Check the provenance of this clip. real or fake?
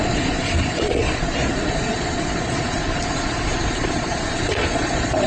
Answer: fake